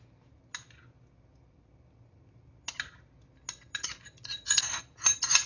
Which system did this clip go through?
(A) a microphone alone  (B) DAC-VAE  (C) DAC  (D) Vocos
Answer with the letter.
A